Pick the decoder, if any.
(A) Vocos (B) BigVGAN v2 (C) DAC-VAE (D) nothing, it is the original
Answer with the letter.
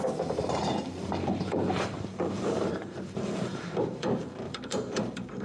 B